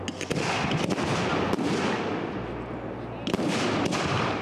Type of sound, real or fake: real